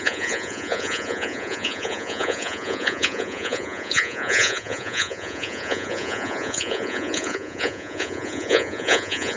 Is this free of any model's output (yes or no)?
no